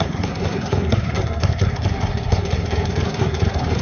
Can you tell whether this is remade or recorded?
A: remade